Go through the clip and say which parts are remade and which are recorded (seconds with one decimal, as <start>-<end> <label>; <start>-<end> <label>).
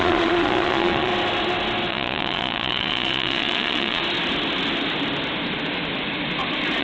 0.0-1.1 remade; 1.1-1.9 recorded; 1.9-4.0 remade; 4.0-6.8 recorded